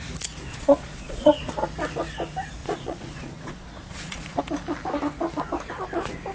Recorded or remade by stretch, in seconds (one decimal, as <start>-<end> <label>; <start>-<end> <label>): 0.0-0.5 recorded; 0.5-1.5 remade; 1.5-2.6 recorded; 2.6-4.4 remade; 4.4-6.3 recorded